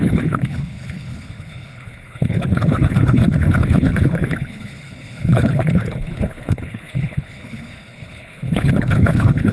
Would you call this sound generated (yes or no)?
yes